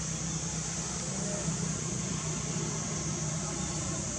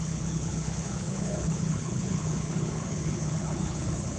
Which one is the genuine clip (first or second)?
first